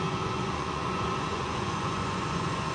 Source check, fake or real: fake